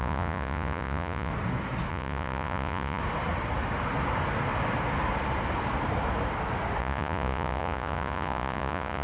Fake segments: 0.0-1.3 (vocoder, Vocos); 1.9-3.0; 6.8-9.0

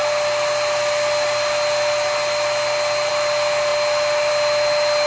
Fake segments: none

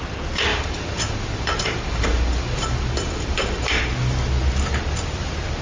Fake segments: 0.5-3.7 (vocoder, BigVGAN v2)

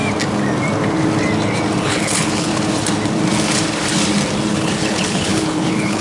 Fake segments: 1.8-2.5 (codec, HILCodec); 4.5-6.0

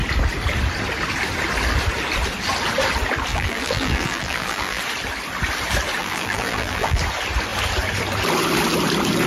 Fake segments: 3.3-4.8 (vocoder, BigVGAN v2); 6.0-7.0